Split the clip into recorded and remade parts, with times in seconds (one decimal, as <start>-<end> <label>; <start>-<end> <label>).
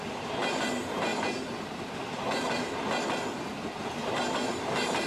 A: 0.0-1.1 remade; 1.1-3.6 recorded; 3.6-5.1 remade